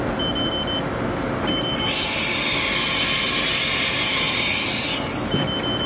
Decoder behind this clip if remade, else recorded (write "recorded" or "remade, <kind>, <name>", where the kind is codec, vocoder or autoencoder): recorded